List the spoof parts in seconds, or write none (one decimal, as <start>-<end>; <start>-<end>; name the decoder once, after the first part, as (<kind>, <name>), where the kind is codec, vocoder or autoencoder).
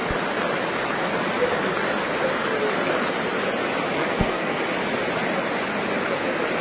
4.0-4.6 (codec, SNAC)